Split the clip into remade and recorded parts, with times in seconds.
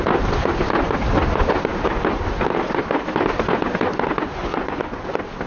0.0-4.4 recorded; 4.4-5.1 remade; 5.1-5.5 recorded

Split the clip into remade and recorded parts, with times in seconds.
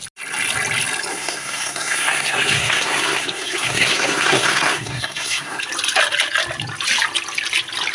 0.0-1.1 recorded; 1.1-5.6 remade; 5.6-7.9 recorded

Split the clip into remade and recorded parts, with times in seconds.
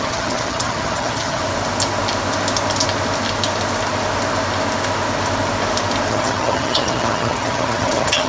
0.0-1.4 remade; 1.4-6.1 recorded; 6.1-8.3 remade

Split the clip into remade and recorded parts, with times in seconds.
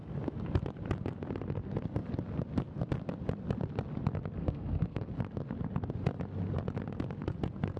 0.0-4.4 recorded; 4.4-5.1 remade; 5.1-7.8 recorded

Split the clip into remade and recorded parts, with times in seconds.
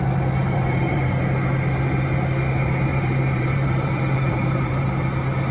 0.0-0.4 recorded; 0.4-1.2 remade; 1.2-2.9 recorded; 2.9-5.0 remade; 5.0-5.5 recorded